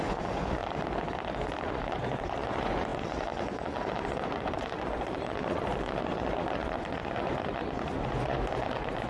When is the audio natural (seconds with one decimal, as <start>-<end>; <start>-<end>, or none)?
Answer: 0.6-1.7